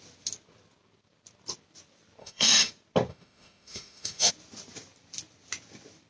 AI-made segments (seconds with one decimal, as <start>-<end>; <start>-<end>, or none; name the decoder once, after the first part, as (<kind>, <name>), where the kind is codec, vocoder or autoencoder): 2.2-2.7 (autoencoder, DAC-VAE); 3.1-4.3